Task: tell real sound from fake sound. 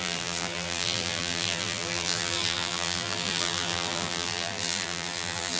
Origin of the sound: fake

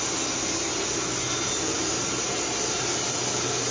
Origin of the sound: real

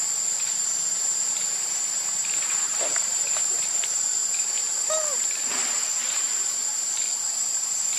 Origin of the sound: fake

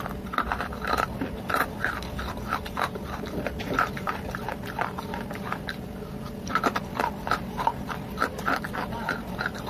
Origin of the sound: fake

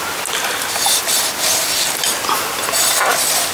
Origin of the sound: real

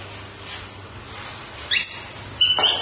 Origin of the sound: real